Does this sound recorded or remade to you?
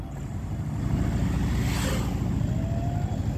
recorded